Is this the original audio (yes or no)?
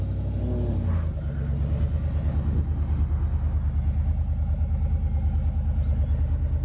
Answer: yes